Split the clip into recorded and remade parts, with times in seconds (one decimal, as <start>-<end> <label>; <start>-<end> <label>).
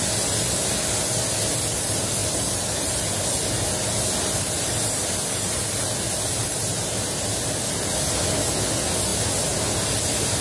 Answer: 0.0-10.4 recorded